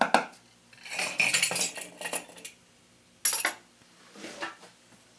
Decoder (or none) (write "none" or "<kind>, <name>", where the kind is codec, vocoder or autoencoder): none